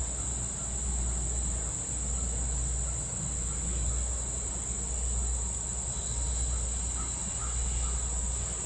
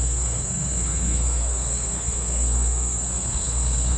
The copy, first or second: second